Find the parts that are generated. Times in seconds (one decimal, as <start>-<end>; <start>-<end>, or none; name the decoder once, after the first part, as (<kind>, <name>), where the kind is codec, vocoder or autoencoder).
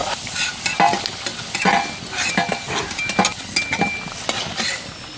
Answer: none